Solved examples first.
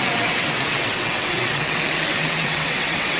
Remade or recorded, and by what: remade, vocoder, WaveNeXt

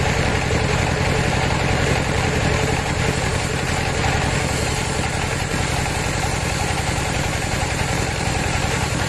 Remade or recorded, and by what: remade, vocoder, BigVGAN v2